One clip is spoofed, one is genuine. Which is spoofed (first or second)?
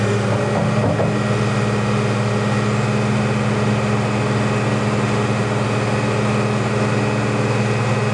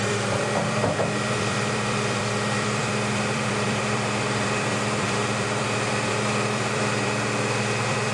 second